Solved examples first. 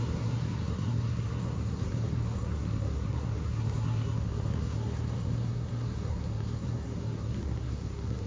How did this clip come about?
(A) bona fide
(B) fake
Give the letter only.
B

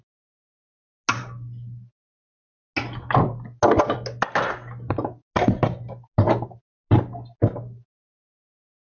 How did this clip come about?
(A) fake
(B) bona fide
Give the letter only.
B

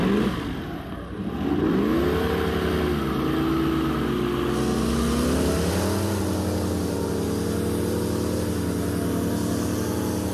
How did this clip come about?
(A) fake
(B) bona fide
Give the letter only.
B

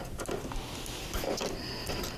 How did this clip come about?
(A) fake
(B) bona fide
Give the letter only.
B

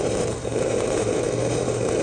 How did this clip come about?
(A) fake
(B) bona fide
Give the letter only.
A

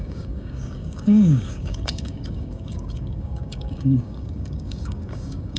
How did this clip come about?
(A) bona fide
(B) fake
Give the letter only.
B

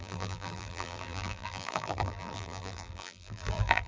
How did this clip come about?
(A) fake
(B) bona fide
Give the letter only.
A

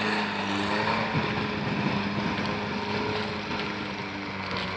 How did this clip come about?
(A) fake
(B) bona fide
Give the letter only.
B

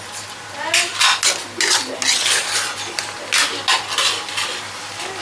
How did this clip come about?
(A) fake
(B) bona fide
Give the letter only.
B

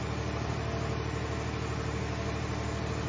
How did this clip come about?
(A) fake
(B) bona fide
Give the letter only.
B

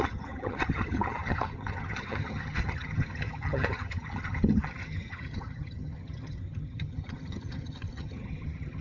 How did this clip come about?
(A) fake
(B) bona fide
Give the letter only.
A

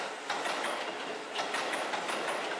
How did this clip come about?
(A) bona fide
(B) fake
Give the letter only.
A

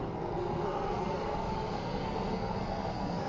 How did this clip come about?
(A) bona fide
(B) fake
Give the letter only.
B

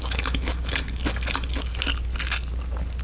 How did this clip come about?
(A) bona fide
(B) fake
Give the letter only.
A